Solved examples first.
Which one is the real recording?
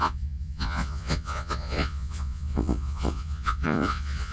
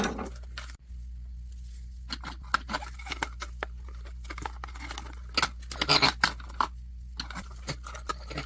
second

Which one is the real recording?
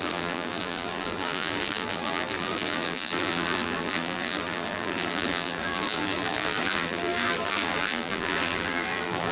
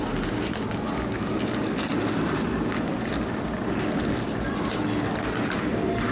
second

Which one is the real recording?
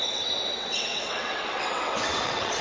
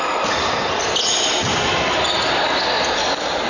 second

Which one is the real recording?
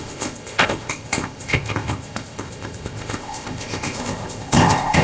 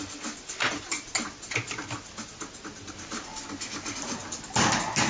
second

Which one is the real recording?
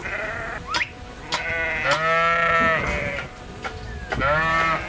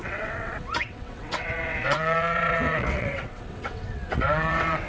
first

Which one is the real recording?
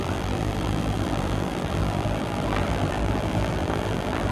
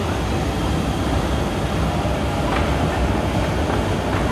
second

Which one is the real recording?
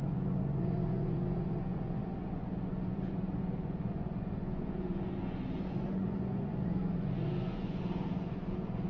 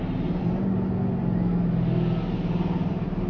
second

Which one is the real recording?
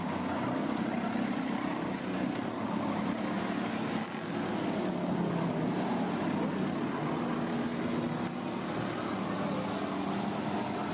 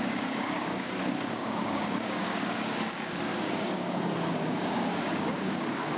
first